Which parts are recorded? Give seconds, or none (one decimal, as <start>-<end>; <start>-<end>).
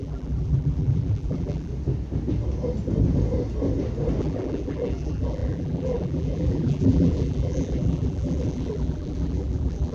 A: 1.7-4.2